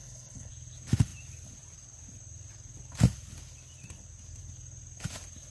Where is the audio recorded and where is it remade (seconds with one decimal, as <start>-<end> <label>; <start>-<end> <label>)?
0.0-0.5 remade; 0.5-5.5 recorded